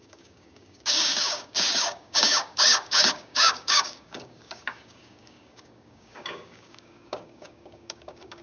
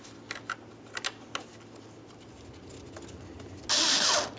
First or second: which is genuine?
second